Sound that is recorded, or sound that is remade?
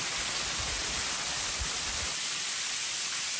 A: remade